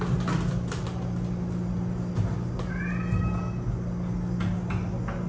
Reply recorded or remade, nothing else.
recorded